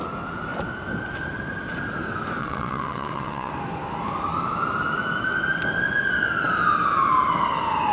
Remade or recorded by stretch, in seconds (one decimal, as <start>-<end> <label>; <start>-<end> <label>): 0.0-2.4 recorded; 2.4-3.5 remade; 3.5-7.9 recorded